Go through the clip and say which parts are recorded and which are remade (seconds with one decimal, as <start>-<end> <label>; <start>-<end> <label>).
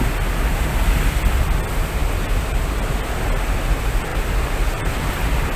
0.0-4.1 recorded; 4.1-5.1 remade; 5.1-5.6 recorded